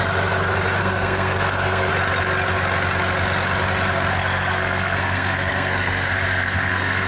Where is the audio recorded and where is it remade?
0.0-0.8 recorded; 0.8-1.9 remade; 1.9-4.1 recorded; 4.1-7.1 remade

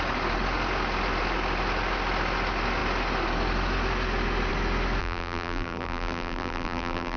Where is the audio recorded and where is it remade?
0.0-5.0 recorded; 5.0-7.2 remade

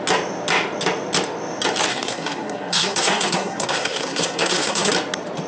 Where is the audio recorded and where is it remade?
0.0-1.9 recorded; 1.9-4.9 remade; 4.9-5.5 recorded

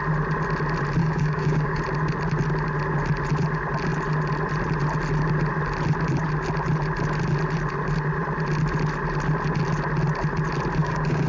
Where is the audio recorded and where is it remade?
0.0-1.0 recorded; 1.0-1.8 remade; 1.8-10.8 recorded; 10.8-11.3 remade

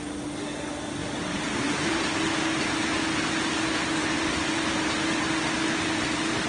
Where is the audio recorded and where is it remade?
0.0-1.0 recorded; 1.0-2.0 remade; 2.0-4.0 recorded; 4.0-5.0 remade; 5.0-6.5 recorded

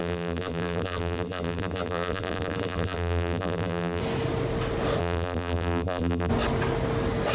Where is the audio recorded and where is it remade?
0.0-4.0 remade; 4.0-5.0 recorded; 5.0-6.3 remade; 6.3-7.3 recorded

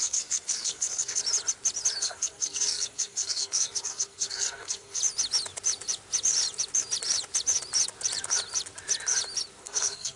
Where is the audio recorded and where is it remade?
0.0-1.2 remade; 1.2-2.0 recorded; 2.0-5.0 remade; 5.0-9.6 recorded; 9.6-10.2 remade

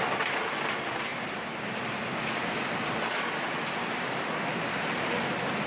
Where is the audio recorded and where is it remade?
0.0-5.7 recorded